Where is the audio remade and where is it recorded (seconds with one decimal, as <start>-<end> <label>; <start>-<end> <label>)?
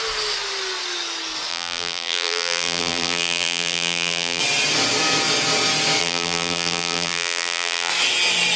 0.0-1.5 recorded; 1.5-4.4 remade; 4.4-6.0 recorded; 6.0-7.9 remade; 7.9-8.6 recorded